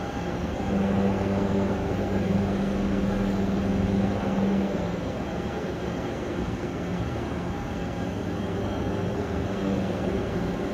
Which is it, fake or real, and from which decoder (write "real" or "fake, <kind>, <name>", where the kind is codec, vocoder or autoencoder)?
fake, codec, SNAC